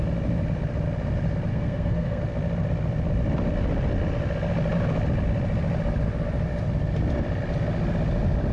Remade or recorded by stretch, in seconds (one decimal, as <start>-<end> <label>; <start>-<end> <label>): 0.0-1.5 recorded; 1.5-2.2 remade; 2.2-8.5 recorded